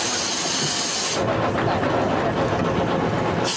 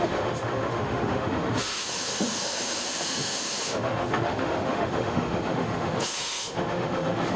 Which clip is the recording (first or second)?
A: first